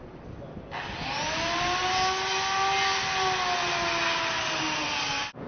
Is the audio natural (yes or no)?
yes